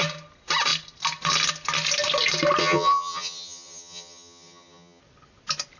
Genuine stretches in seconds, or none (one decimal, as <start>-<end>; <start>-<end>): 0.0-2.6; 5.0-5.8

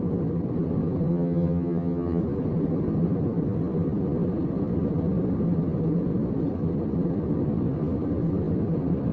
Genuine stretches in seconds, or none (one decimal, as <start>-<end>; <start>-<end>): 0.0-1.1; 2.2-9.1

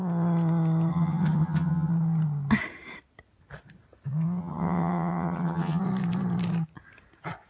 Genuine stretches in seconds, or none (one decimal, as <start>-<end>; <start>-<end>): 0.0-0.9; 1.9-4.4; 5.8-7.5

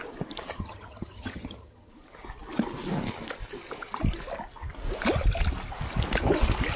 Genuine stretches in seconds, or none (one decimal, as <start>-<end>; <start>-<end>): 0.0-0.5; 1.9-6.8

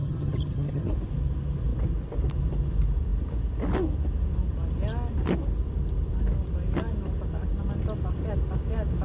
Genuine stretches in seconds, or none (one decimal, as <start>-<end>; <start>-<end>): 0.9-9.0